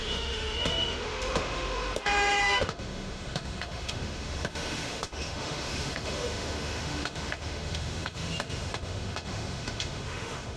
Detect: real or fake fake